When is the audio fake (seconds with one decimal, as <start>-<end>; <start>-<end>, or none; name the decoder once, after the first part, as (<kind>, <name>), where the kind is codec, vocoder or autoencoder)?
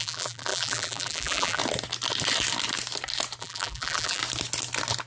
0.0-1.6 (vocoder, BigVGAN v2); 3.4-4.2